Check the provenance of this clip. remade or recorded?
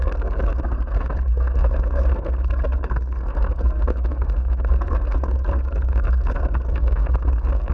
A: remade